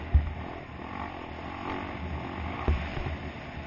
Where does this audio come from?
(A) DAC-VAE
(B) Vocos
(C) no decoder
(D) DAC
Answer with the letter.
C